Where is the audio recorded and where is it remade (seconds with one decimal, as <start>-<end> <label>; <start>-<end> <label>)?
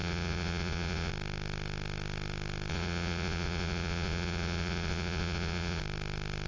0.0-1.1 remade; 1.1-2.7 recorded; 2.7-5.8 remade; 5.8-6.5 recorded